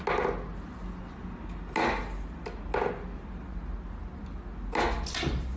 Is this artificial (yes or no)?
no